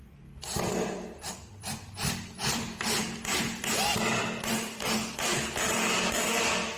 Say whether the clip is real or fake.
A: fake